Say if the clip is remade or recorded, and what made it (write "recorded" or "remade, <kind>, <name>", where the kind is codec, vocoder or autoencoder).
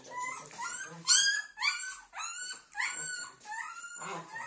recorded